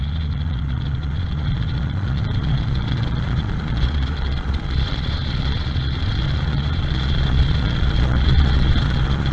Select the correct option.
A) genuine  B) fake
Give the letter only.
B